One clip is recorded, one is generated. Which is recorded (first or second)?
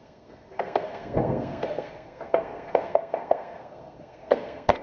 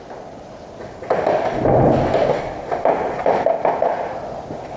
second